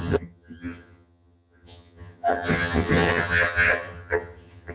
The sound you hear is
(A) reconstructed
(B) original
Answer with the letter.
A